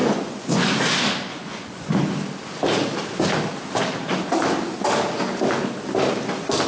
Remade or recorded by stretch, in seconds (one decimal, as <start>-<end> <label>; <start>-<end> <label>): 0.0-0.8 remade; 0.8-1.3 recorded; 1.3-1.9 remade; 1.9-6.7 recorded